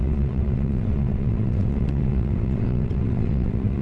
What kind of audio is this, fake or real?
fake